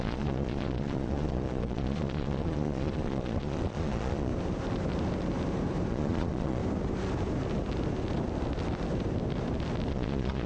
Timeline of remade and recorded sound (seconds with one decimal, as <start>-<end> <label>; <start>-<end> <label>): 0.0-4.3 remade; 4.3-5.9 recorded; 5.9-6.6 remade; 6.6-9.9 recorded; 9.9-10.5 remade